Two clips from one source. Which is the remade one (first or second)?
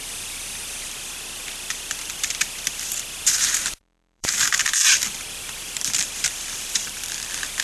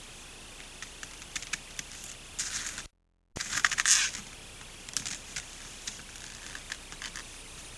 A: first